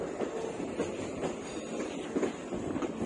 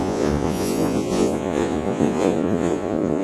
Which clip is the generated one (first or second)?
second